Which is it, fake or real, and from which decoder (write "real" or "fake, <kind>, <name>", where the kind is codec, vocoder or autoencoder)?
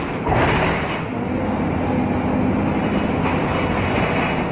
real